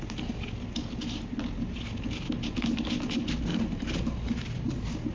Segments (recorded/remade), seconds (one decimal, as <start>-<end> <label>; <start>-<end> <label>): 0.0-3.5 recorded; 3.5-4.4 remade; 4.4-5.1 recorded